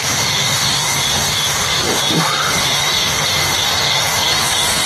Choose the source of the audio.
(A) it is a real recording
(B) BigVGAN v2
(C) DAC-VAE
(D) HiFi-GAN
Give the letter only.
C